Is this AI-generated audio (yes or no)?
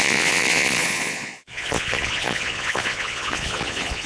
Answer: yes